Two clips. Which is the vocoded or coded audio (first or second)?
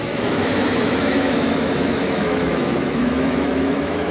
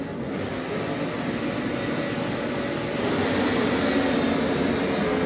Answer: first